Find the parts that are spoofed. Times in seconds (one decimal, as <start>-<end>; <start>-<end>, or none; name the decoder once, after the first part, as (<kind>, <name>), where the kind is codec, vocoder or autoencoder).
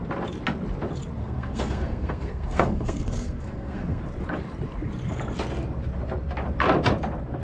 1.2-4.0 (codec, SNAC)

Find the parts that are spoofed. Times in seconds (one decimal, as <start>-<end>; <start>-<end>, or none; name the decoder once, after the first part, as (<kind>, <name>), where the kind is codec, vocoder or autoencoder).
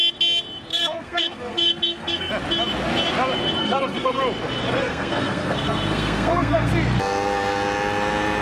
0.7-2.3 (codec, SNAC); 3.6-4.2; 4.7-6.7